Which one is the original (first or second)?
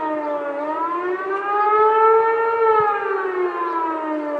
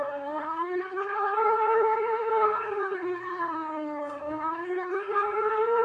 first